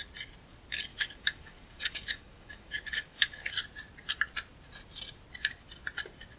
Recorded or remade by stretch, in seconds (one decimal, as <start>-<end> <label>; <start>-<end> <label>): 0.0-0.9 recorded; 0.9-3.5 remade; 3.5-6.4 recorded

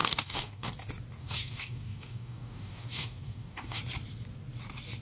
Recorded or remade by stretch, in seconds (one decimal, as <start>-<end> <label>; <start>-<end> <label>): 0.0-0.7 remade; 0.7-1.2 recorded; 1.2-3.8 remade; 3.8-5.0 recorded